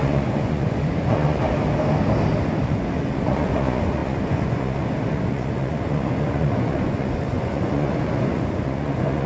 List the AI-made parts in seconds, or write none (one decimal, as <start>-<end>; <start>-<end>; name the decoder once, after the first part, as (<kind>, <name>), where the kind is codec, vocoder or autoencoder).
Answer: 0.0-1.4 (vocoder, Vocos); 2.6-9.3